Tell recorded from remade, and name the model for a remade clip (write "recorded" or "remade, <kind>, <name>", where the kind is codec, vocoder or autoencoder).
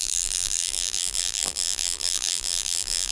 remade, vocoder, BigVGAN v2